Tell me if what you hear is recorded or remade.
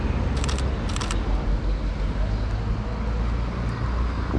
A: recorded